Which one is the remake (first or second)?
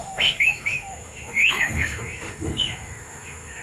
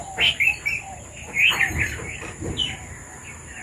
first